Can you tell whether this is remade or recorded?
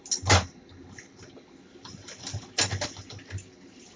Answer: recorded